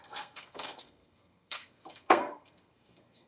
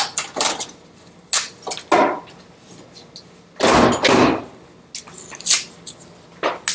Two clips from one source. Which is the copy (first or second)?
first